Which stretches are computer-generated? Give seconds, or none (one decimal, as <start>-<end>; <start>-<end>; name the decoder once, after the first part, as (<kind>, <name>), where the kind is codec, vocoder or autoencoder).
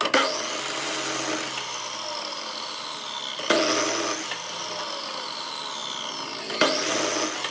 none